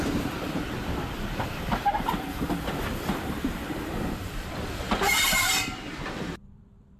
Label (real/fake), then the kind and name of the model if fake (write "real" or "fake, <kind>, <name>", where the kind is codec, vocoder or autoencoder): fake, vocoder, BigVGAN v2